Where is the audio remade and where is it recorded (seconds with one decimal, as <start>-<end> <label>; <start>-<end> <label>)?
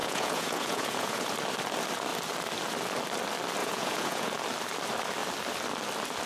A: 0.0-1.3 remade; 1.3-3.6 recorded; 3.6-4.3 remade; 4.3-6.3 recorded